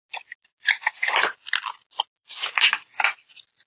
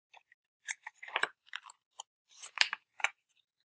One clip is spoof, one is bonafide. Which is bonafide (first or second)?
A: first